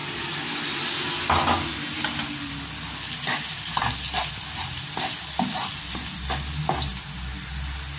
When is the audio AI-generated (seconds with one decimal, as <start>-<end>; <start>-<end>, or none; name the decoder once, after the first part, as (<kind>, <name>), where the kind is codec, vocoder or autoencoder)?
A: 4.3-6.9 (vocoder, BigVGAN v2)